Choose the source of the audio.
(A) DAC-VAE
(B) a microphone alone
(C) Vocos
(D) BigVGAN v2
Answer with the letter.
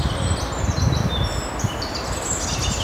B